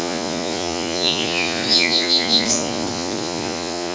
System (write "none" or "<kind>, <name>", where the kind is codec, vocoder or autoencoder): vocoder, Vocos